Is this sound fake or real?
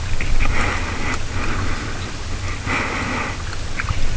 real